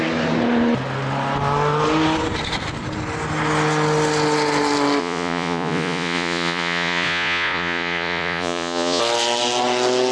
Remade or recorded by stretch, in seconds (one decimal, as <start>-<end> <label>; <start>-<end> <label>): 0.0-5.0 recorded; 5.0-9.0 remade; 9.0-10.1 recorded